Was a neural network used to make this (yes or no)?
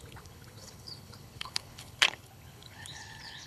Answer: yes